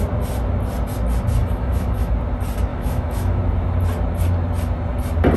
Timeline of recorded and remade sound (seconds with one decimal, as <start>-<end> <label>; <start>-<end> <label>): 0.0-1.4 recorded; 1.4-2.1 remade; 2.1-2.7 recorded; 2.7-3.4 remade; 3.4-5.4 recorded